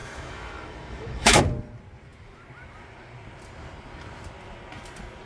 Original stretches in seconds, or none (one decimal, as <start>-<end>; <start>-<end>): 1.4-5.3